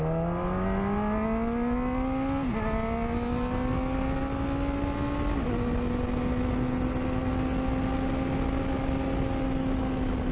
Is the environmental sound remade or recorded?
recorded